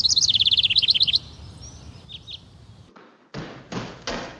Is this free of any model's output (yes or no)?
yes